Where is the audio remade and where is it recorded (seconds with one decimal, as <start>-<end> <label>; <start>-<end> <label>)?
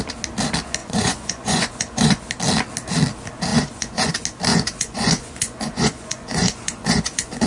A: 0.0-0.8 recorded; 0.8-2.2 remade; 2.2-3.5 recorded; 3.5-4.1 remade; 4.1-4.5 recorded; 4.5-7.5 remade